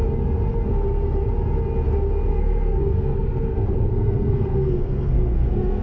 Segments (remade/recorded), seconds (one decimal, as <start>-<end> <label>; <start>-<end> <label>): 0.0-2.3 recorded; 2.3-5.8 remade